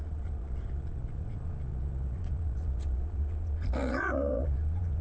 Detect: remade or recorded remade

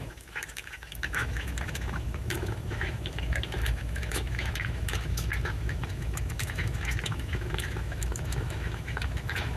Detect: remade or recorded remade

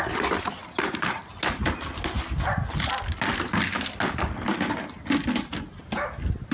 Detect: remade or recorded recorded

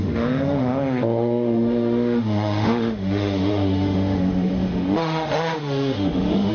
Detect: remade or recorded remade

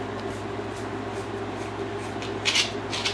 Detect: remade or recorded recorded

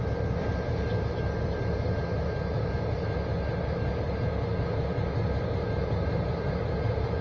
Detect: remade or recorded recorded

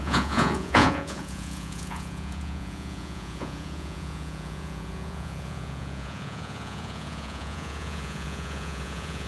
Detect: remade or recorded remade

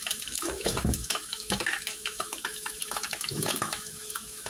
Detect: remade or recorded remade